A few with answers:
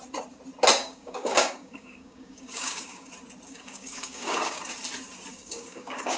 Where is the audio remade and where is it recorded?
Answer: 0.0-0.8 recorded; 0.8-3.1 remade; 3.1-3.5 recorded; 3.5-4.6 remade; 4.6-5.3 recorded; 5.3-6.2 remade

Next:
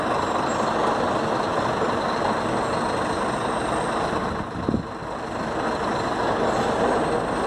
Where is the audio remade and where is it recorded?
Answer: 0.0-7.5 recorded

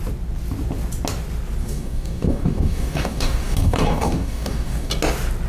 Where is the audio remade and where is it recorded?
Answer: 0.0-1.6 recorded; 1.6-4.9 remade; 4.9-5.5 recorded

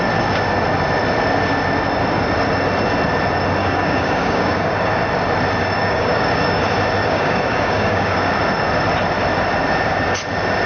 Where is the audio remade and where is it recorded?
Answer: 0.0-3.6 recorded; 3.6-5.0 remade; 5.0-5.6 recorded; 5.6-6.6 remade; 6.6-7.0 recorded; 7.0-8.3 remade; 8.3-10.7 recorded

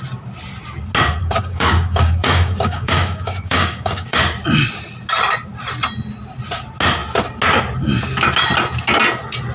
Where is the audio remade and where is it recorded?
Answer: 0.0-1.2 recorded; 1.2-4.2 remade; 4.2-9.5 recorded

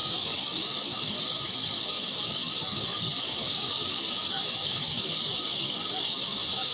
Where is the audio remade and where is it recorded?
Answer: 0.0-6.7 remade